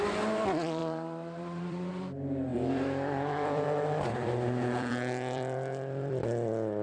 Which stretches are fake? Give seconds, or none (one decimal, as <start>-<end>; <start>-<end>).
0.8-1.9; 2.5-6.2